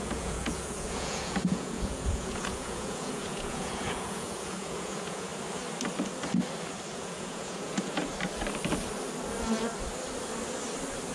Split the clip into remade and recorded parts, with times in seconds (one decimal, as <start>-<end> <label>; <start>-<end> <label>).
0.0-5.3 remade; 5.3-6.9 recorded; 6.9-8.0 remade; 8.0-11.1 recorded